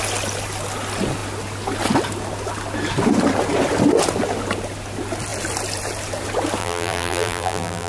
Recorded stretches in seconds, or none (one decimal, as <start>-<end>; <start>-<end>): 0.0-6.6